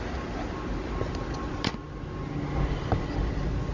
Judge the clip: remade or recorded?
recorded